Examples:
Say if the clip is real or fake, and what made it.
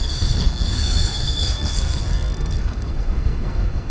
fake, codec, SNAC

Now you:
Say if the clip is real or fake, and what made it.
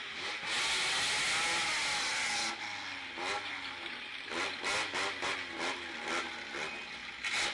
real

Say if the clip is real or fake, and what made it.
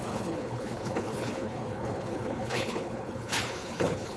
fake, codec, HILCodec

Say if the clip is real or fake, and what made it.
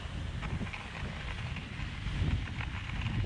real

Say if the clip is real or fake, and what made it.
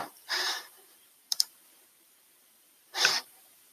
fake, vocoder, BigVGAN v2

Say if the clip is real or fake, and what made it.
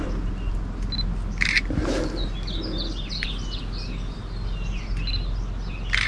real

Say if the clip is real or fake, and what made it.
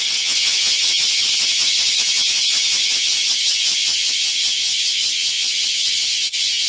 fake, vocoder, HiFi-GAN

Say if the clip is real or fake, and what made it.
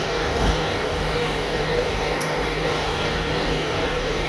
fake, codec, DAC